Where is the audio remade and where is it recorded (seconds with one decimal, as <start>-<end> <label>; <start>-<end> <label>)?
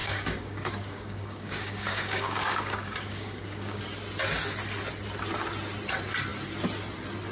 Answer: 0.0-3.8 remade; 3.8-7.3 recorded